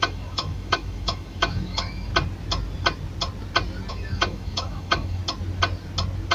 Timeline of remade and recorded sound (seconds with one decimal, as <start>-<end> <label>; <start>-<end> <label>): 0.0-2.1 remade; 2.1-3.9 recorded; 3.9-5.2 remade; 5.2-6.3 recorded